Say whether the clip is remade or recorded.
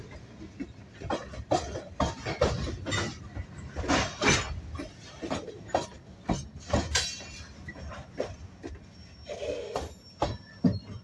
recorded